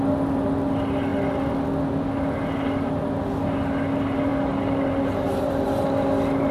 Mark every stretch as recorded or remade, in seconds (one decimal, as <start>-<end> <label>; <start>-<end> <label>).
0.0-6.5 recorded